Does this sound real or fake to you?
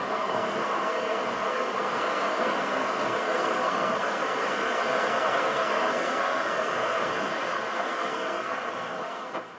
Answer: fake